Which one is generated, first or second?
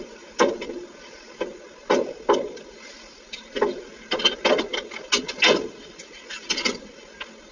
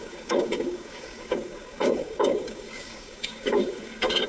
second